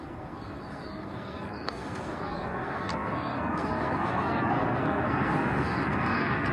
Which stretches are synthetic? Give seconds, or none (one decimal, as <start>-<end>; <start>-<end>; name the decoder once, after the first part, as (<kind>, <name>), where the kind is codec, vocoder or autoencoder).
0.0-6.5 (codec, SNAC)